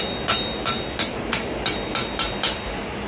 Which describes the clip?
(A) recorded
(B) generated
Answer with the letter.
A